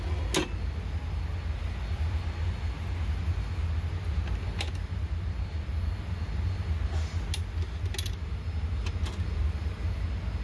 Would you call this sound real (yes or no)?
yes